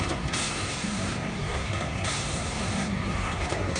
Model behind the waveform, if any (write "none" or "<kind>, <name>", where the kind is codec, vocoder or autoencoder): codec, SNAC